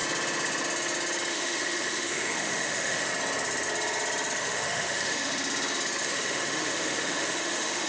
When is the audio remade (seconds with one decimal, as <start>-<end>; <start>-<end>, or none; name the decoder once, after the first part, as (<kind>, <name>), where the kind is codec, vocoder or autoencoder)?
1.3-3.1 (autoencoder, DAC-VAE); 4.4-5.3; 6.0-7.9